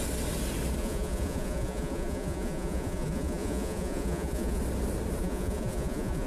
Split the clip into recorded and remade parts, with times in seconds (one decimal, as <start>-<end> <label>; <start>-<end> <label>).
0.0-0.8 recorded; 0.8-4.6 remade; 4.6-5.2 recorded; 5.2-6.3 remade

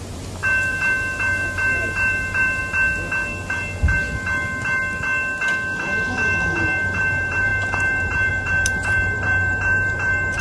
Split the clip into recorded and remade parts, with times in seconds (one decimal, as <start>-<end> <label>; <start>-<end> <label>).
0.0-2.6 remade; 2.6-7.0 recorded; 7.0-10.4 remade

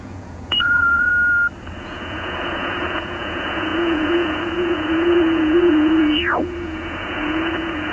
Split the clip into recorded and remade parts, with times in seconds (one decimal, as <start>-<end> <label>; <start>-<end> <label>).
0.0-1.1 remade; 1.1-1.8 recorded; 1.8-7.9 remade

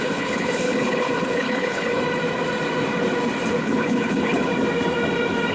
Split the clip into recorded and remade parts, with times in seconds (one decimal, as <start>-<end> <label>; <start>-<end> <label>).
0.0-2.0 remade; 2.0-3.6 recorded; 3.6-4.5 remade; 4.5-5.5 recorded

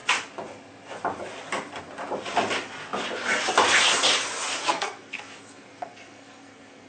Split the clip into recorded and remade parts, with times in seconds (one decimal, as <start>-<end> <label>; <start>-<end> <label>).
0.0-4.6 recorded; 4.6-6.9 remade

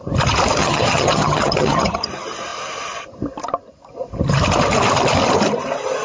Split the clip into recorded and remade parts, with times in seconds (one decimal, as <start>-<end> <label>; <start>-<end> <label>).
0.0-0.6 recorded; 0.6-2.1 remade; 2.1-6.0 recorded

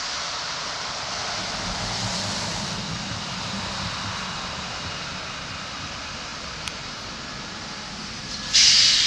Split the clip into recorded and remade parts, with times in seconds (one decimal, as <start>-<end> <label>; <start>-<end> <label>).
0.0-1.2 remade; 1.2-5.8 recorded; 5.8-9.1 remade

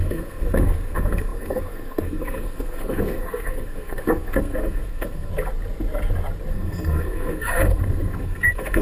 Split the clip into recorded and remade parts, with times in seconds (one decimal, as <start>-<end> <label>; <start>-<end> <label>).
0.0-5.3 remade; 5.3-6.5 recorded; 6.5-8.8 remade